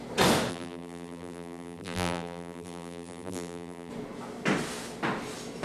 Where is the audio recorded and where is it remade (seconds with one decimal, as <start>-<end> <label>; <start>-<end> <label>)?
0.0-0.5 recorded; 0.5-3.9 remade; 3.9-5.6 recorded